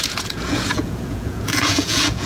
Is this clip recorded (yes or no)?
no